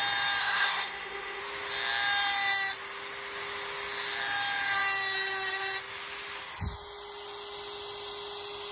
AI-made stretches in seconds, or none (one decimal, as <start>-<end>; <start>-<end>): 0.4-1.4